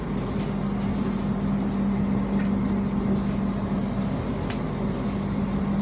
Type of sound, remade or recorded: recorded